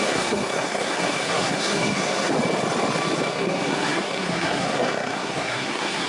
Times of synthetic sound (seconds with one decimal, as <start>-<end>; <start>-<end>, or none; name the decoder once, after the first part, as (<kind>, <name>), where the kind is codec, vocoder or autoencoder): 0.0-2.3 (codec, SNAC); 3.3-6.1